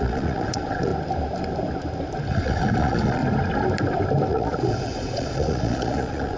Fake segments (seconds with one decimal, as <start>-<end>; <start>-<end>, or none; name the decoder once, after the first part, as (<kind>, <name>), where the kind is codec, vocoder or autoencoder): 0.0-0.9 (vocoder, Vocos); 2.3-3.2; 4.3-6.4